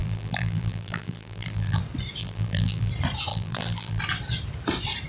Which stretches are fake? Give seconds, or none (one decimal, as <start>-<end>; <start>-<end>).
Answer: 0.0-1.8; 2.2-2.9; 3.3-4.0

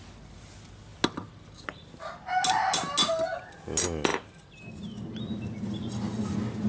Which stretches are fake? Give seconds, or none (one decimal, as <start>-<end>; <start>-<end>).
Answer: none

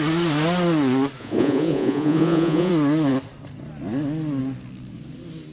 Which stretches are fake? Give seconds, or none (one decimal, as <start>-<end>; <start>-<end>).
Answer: 1.2-2.7

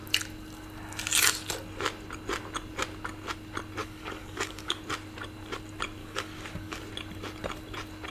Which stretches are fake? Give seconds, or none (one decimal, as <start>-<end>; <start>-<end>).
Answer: 3.8-4.8; 6.0-6.8

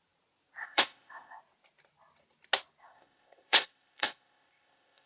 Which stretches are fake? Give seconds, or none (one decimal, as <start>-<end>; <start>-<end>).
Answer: 0.6-1.4; 2.8-5.1